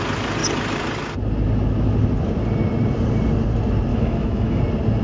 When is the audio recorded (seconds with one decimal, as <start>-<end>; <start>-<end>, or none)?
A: 0.0-3.9; 4.6-5.0